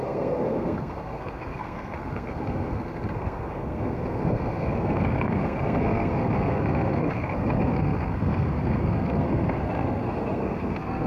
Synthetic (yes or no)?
yes